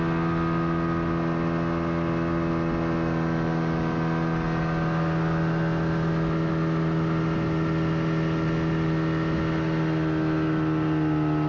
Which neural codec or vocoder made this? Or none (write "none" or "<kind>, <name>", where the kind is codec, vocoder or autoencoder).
none